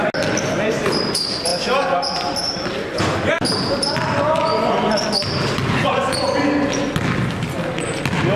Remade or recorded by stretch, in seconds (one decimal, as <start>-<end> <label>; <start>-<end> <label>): 0.0-8.4 recorded